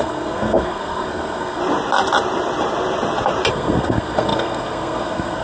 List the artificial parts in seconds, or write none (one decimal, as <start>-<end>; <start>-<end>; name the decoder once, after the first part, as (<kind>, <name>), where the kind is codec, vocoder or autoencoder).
0.0-1.6 (codec, SNAC); 3.5-5.4